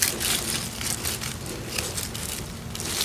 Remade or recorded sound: recorded